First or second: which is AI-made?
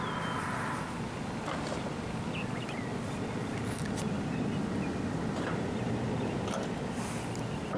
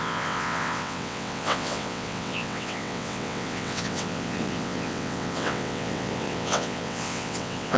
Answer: second